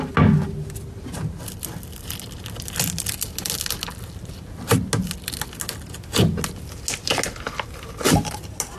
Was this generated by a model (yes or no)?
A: no